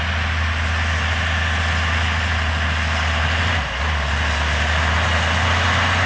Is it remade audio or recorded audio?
recorded